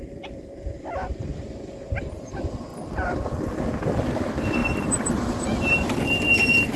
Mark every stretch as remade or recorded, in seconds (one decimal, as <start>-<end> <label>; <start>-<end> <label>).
0.0-1.3 remade; 1.3-2.0 recorded; 2.0-2.7 remade; 2.7-3.7 recorded; 3.7-6.8 remade